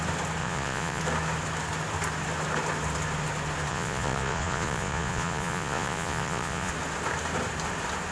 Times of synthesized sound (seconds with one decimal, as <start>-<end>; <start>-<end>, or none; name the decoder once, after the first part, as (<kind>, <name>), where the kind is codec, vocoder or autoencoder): 0.4-1.0 (vocoder, Vocos); 3.7-6.7